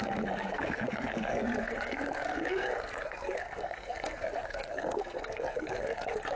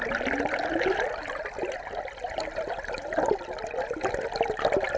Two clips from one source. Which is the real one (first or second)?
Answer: second